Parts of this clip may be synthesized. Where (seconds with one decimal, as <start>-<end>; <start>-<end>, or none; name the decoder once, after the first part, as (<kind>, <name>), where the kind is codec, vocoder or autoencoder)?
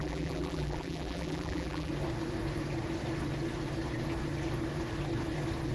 0.0-1.9 (vocoder, BigVGAN v2)